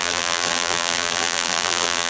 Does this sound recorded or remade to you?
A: remade